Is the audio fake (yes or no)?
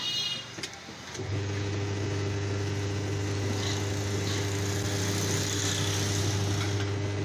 no